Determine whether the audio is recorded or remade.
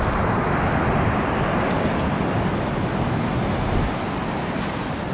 recorded